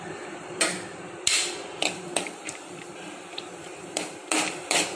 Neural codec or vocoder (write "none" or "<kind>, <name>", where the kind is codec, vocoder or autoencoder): vocoder, BigVGAN v2